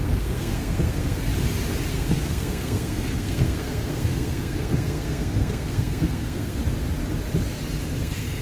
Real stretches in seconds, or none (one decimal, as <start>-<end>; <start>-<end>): 1.3-1.9; 6.6-8.0